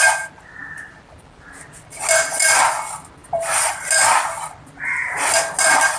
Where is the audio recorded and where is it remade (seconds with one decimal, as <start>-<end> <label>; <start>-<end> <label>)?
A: 0.0-6.0 recorded